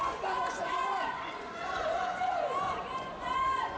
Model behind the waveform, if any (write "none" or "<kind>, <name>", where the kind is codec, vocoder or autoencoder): vocoder, Vocos